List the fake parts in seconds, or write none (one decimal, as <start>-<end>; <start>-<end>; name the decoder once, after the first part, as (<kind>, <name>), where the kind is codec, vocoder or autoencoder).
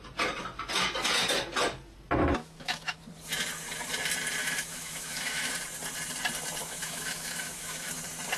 2.4-3.0 (autoencoder, DAC-VAE); 4.4-5.5; 6.6-7.9